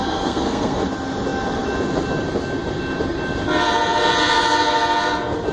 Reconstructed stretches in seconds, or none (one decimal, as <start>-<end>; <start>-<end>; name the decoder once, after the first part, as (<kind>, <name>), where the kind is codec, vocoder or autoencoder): 0.0-0.8 (codec, SNAC)